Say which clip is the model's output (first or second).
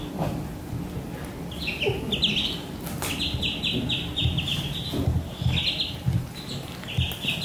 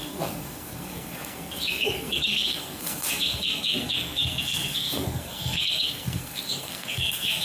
second